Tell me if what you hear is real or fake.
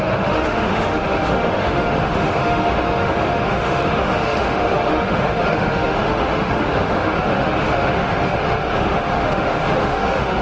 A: fake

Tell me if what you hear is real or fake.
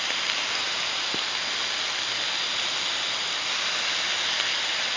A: real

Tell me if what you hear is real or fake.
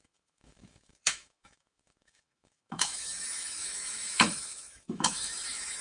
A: fake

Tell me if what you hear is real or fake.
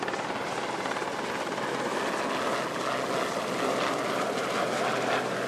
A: real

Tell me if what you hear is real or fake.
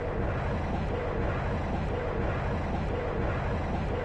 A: real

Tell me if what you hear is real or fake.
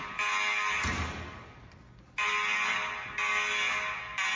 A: real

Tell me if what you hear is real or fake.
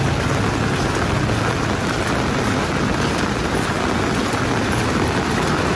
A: real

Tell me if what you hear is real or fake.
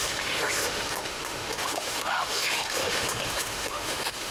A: fake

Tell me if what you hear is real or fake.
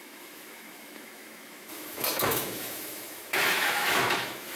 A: fake